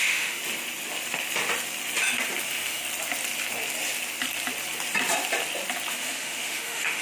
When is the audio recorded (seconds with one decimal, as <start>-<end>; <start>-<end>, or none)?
0.4-2.4; 2.8-5.9